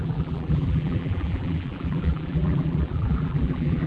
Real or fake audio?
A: fake